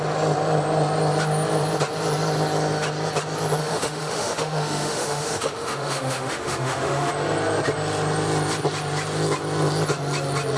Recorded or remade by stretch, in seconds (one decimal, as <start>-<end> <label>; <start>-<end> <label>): 0.0-3.6 recorded; 3.6-7.1 remade; 7.1-10.6 recorded

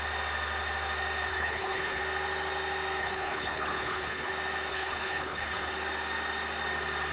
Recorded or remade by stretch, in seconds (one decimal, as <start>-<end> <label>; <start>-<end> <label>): 0.0-1.3 recorded; 1.3-2.0 remade; 2.0-3.0 recorded; 3.0-4.3 remade; 4.3-4.7 recorded; 4.7-5.7 remade; 5.7-7.1 recorded

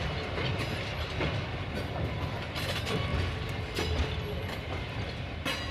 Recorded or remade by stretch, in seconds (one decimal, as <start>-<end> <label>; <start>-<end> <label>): 0.0-5.7 recorded

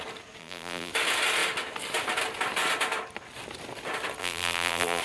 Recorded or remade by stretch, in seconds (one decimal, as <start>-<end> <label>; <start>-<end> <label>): 0.0-0.4 recorded; 0.4-0.9 remade; 0.9-4.2 recorded; 4.2-5.0 remade

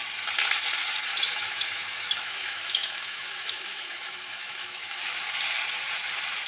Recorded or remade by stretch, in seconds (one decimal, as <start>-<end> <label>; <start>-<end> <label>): 0.0-1.1 recorded; 1.1-5.0 remade; 5.0-6.5 recorded

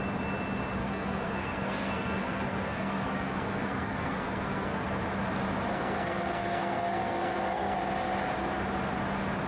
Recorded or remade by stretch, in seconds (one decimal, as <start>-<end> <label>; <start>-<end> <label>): 0.0-0.8 recorded; 0.8-5.0 remade; 5.0-5.7 recorded; 5.7-7.8 remade; 7.8-9.5 recorded

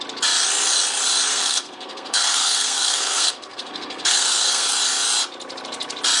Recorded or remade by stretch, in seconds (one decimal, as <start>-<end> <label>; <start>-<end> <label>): 0.0-1.3 recorded; 1.3-4.7 remade; 4.7-6.2 recorded